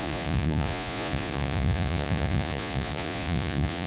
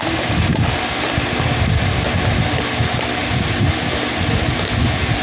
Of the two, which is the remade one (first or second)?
first